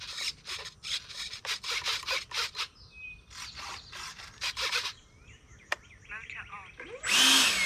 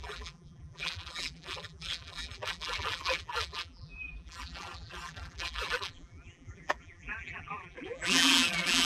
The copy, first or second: second